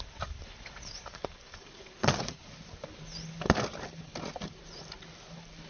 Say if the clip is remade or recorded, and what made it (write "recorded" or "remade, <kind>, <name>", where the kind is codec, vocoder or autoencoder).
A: recorded